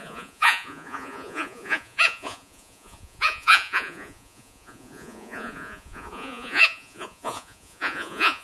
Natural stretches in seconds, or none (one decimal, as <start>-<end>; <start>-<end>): none